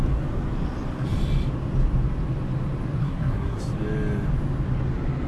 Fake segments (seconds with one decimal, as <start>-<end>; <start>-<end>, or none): 3.0-3.6